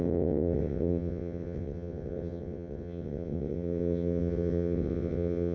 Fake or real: fake